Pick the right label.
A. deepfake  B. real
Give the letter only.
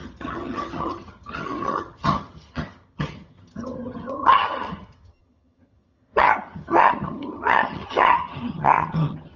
A